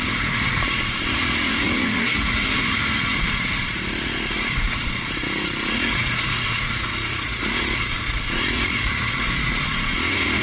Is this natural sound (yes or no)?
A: no